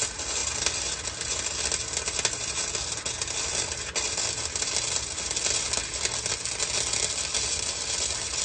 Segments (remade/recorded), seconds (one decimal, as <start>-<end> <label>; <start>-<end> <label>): 0.0-8.4 recorded